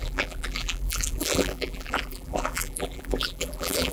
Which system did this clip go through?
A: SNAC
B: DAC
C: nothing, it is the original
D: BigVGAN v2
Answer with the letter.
D